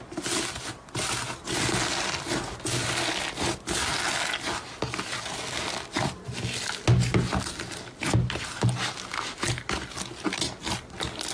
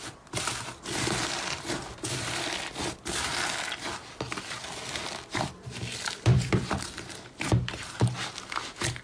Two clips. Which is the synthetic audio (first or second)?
second